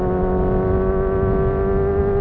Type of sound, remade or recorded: recorded